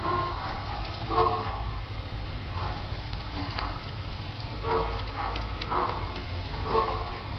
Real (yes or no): no